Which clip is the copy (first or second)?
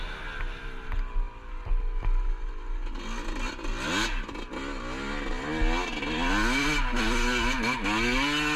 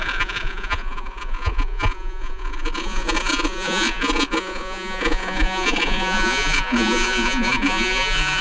second